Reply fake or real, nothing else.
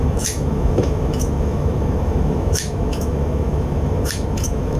fake